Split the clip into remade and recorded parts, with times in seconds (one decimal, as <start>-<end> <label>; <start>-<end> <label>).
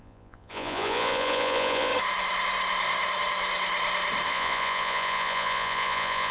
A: 0.0-1.9 remade; 1.9-4.3 recorded; 4.3-6.3 remade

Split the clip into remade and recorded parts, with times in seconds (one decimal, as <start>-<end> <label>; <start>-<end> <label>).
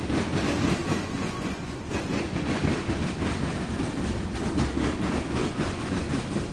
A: 0.0-0.8 recorded; 0.8-2.6 remade; 2.6-5.4 recorded; 5.4-6.1 remade; 6.1-6.5 recorded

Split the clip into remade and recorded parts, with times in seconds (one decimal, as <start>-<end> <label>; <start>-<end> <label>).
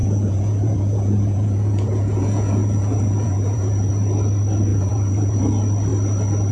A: 0.0-3.9 remade; 3.9-4.7 recorded; 4.7-5.4 remade; 5.4-6.5 recorded